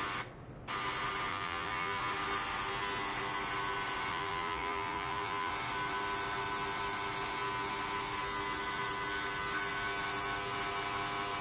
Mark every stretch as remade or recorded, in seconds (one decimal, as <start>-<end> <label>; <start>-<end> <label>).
0.0-1.3 recorded; 1.3-2.0 remade; 2.0-4.1 recorded; 4.1-5.5 remade; 5.5-11.4 recorded